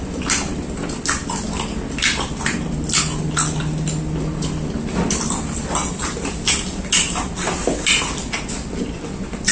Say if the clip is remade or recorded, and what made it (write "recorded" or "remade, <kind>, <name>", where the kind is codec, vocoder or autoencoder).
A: recorded